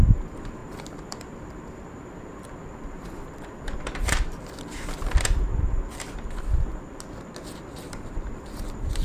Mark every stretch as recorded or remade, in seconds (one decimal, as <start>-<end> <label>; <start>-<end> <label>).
0.0-6.7 remade; 6.7-7.5 recorded; 7.5-9.0 remade